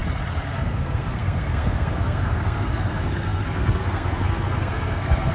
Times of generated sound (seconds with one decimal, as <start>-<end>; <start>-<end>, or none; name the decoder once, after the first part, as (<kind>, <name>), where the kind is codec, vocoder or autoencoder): 0.5-5.3 (codec, SNAC)